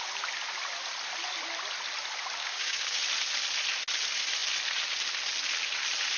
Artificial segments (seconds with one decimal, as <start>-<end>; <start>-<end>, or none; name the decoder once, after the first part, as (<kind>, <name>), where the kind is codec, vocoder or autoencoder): 2.4-3.0 (codec, DAC)